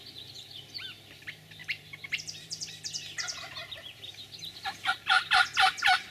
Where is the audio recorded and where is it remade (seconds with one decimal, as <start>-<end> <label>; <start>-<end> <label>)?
0.0-1.6 recorded; 1.6-5.3 remade; 5.3-6.1 recorded